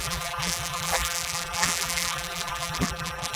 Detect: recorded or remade remade